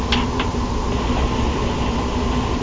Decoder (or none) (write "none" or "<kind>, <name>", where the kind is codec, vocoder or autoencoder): none